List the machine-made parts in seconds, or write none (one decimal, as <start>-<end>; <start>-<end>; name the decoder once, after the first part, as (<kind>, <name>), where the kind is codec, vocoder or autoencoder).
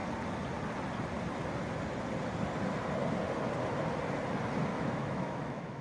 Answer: 4.7-5.8 (autoencoder, DAC-VAE)